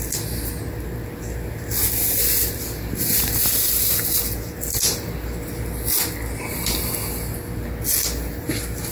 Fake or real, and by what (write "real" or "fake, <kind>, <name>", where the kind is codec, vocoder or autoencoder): real